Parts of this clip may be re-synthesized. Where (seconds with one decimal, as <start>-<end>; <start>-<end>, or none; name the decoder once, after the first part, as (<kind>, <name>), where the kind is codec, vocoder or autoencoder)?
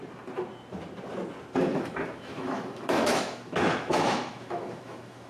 1.7-5.3 (autoencoder, DAC-VAE)